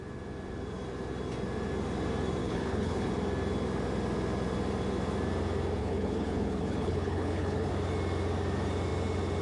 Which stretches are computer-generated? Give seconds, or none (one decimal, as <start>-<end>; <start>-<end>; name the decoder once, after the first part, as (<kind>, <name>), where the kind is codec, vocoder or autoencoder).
2.4-3.1 (codec, HILCodec); 5.8-7.7